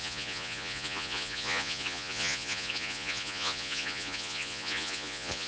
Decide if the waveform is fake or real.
fake